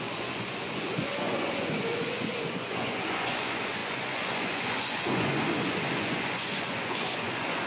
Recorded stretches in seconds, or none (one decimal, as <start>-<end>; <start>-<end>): none